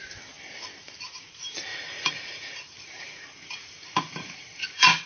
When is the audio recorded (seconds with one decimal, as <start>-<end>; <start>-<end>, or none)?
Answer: 0.0-1.7